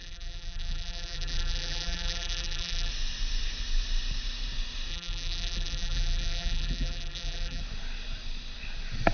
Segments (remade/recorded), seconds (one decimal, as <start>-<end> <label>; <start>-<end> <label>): 0.0-2.9 remade; 2.9-4.9 recorded; 4.9-7.6 remade; 7.6-9.1 recorded